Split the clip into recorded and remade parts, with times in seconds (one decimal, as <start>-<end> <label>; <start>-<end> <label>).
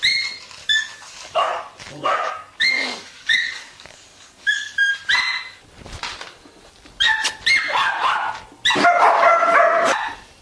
0.0-0.6 recorded; 0.6-1.5 remade; 1.5-1.9 recorded; 1.9-4.9 remade; 4.9-10.4 recorded